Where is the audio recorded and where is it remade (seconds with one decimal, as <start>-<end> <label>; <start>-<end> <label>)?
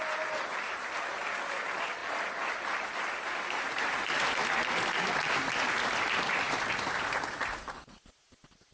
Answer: 0.0-8.7 recorded